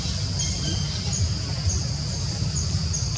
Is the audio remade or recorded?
recorded